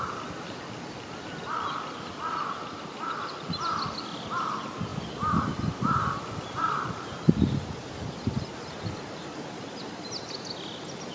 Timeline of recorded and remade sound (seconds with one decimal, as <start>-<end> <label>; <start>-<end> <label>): 0.0-11.1 recorded